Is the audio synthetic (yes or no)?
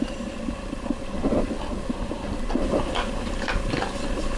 no